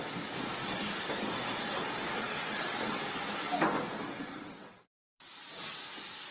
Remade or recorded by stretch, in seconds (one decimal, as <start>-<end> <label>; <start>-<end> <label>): 0.0-2.2 recorded; 2.2-3.2 remade; 3.2-4.1 recorded; 4.1-5.3 remade; 5.3-6.3 recorded